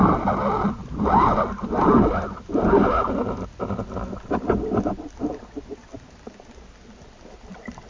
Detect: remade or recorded recorded